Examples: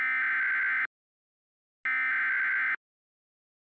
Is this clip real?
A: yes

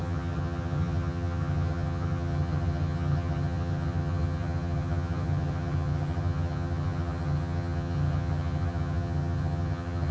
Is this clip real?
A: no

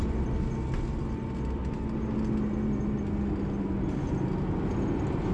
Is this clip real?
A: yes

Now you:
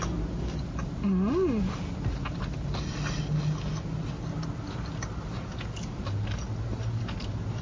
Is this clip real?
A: yes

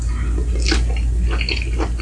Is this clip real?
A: yes